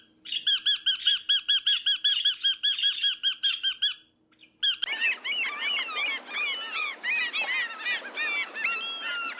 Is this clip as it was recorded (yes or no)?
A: yes